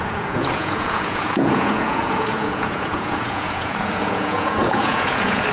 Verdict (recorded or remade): remade